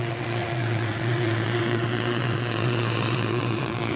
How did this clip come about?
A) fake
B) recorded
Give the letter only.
A